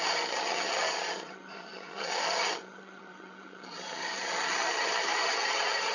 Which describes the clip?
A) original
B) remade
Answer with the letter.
B